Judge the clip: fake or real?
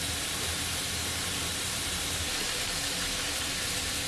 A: fake